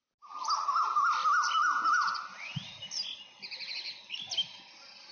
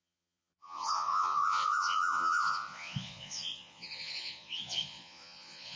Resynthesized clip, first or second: second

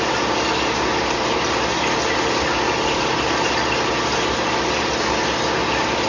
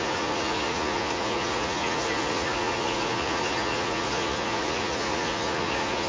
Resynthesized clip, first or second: second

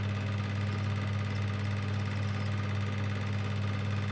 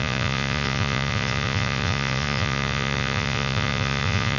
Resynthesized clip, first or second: second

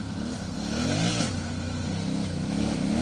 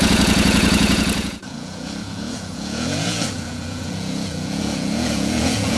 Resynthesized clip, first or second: second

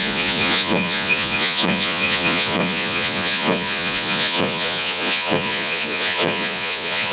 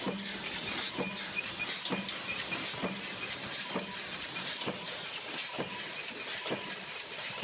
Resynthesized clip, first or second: first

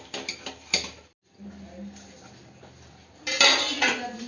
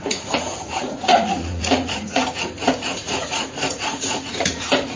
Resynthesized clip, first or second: second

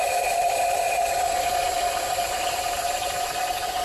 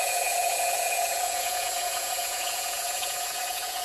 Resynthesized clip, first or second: second